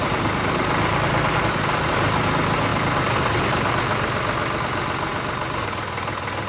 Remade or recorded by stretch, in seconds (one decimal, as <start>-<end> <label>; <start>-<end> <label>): 0.0-6.5 recorded